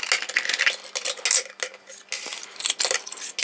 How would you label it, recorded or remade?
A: recorded